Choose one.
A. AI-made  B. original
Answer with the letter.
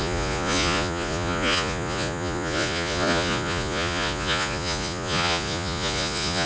A